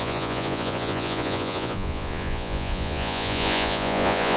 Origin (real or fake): fake